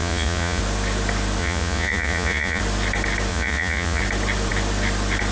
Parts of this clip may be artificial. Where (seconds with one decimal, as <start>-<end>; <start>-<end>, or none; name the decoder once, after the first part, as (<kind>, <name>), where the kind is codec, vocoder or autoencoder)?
0.0-0.6 (vocoder, Vocos); 1.4-2.6; 3.3-4.0

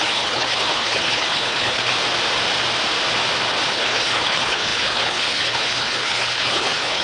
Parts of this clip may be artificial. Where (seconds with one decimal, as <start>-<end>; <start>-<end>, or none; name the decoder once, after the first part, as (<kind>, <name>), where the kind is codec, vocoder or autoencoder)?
0.0-1.9 (codec, HILCodec); 3.7-7.0

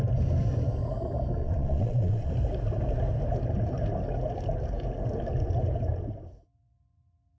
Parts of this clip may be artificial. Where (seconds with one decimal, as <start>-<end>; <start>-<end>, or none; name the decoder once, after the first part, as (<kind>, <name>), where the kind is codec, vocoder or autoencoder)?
1.4-2.3 (vocoder, Vocos)

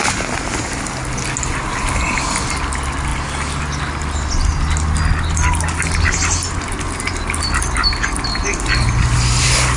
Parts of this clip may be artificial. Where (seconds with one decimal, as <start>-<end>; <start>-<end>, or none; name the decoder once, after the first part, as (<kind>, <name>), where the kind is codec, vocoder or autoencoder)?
none

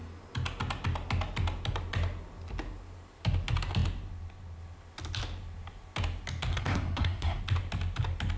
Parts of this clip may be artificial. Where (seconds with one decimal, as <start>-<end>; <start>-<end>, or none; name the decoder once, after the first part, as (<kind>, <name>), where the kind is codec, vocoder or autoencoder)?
6.5-7.4 (codec, SNAC)

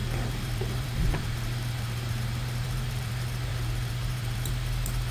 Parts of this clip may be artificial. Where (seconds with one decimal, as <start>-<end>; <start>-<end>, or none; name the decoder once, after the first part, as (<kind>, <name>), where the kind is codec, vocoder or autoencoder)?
0.0-3.1 (vocoder, BigVGAN v2); 3.5-4.5

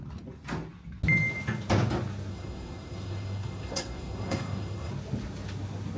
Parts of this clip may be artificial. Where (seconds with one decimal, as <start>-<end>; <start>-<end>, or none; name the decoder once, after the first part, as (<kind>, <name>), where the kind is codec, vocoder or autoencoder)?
2.3-4.9 (codec, SNAC)